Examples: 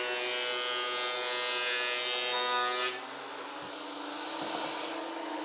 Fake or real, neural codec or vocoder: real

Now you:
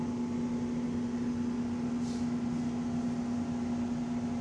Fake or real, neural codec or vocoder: real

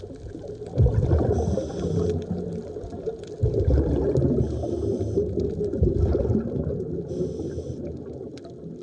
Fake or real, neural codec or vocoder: real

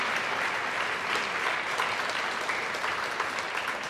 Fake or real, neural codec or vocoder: real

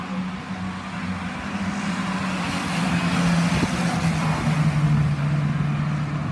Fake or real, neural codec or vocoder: real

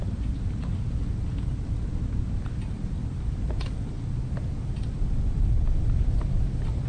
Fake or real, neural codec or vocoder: real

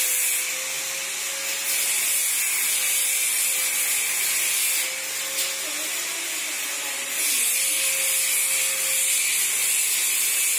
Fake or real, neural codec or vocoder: real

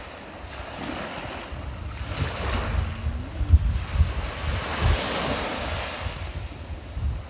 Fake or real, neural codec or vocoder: real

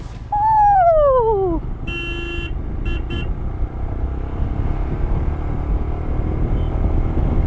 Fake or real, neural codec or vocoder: real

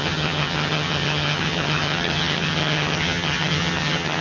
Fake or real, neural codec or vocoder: fake, vocoder, HiFi-GAN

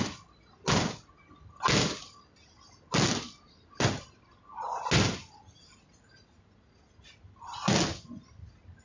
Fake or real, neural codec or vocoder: real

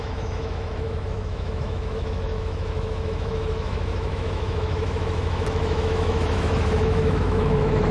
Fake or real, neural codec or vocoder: fake, autoencoder, DAC-VAE